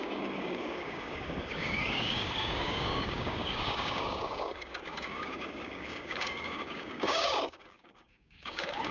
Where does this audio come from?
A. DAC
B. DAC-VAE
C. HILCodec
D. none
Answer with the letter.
A